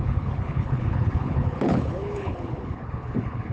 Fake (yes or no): yes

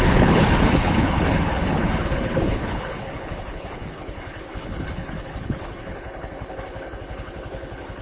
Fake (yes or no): yes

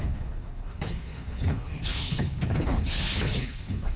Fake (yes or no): yes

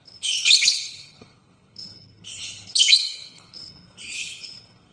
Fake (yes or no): yes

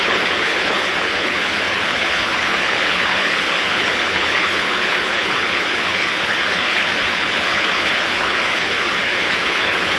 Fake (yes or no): yes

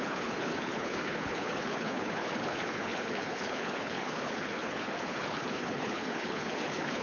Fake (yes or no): yes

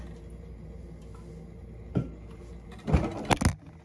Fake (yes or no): no